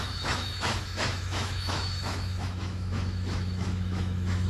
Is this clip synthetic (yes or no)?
yes